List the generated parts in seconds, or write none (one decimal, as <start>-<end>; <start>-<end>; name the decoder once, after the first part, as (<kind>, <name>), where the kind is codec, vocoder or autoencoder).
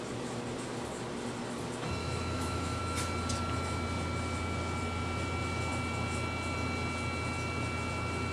2.0-2.8 (autoencoder, DAC-VAE)